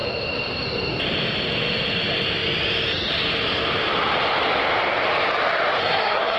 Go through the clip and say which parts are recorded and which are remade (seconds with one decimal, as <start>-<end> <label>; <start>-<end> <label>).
0.0-5.8 recorded; 5.8-6.4 remade